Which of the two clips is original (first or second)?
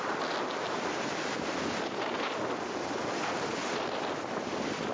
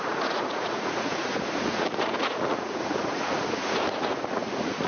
first